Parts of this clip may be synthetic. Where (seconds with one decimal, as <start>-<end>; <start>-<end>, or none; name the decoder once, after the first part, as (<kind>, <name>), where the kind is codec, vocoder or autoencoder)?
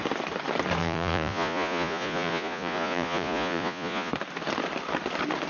0.8-4.1 (vocoder, Vocos)